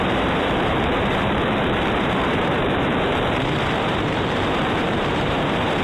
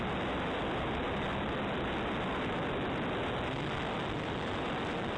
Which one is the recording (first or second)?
second